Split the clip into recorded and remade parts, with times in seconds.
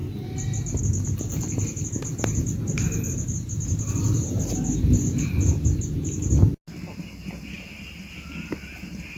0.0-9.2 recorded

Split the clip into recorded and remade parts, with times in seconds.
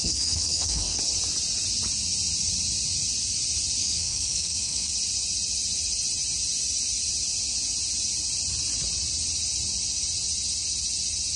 0.0-1.0 remade; 1.0-3.8 recorded; 3.8-4.9 remade; 4.9-11.4 recorded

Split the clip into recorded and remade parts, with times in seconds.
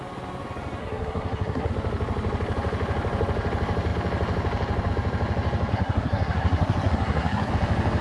0.0-0.8 recorded; 0.8-1.7 remade; 1.7-5.7 recorded; 5.7-7.5 remade; 7.5-8.0 recorded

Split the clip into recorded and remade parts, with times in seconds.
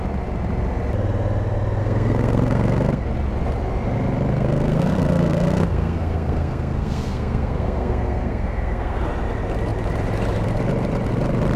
0.0-1.8 recorded; 1.8-3.0 remade; 3.0-4.3 recorded; 4.3-9.0 remade; 9.0-11.6 recorded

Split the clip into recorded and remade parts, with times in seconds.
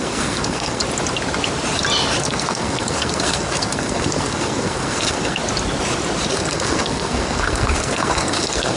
0.0-0.8 remade; 0.8-2.2 recorded; 2.2-5.4 remade; 5.4-6.3 recorded; 6.3-8.8 remade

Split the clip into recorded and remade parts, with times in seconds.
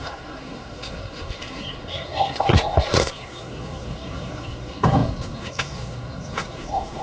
0.0-7.0 remade